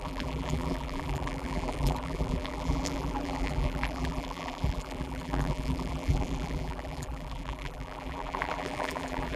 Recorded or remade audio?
remade